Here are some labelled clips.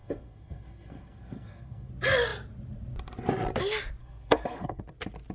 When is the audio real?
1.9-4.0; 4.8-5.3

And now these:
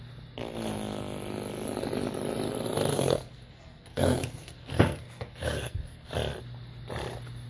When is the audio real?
0.0-2.9; 6.1-7.5

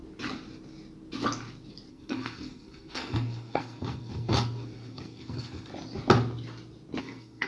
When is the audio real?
0.0-1.9; 5.7-7.0

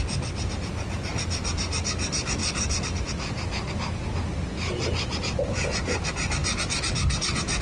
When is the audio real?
0.0-7.6